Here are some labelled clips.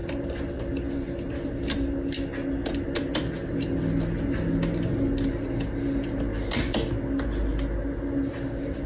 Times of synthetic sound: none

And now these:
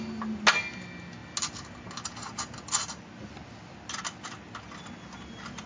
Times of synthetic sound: none

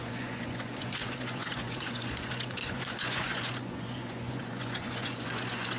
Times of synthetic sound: 0.0-5.8 (vocoder, Vocos)

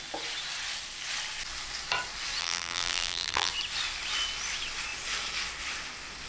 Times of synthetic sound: 2.4-3.5 (vocoder, BigVGAN v2)

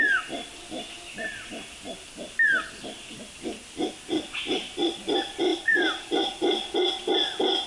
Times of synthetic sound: 5.5-6.3 (vocoder, BigVGAN v2)

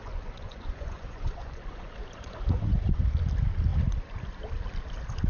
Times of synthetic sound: 0.0-3.0 (vocoder, Vocos)

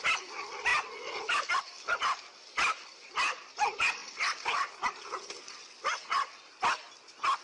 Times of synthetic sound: none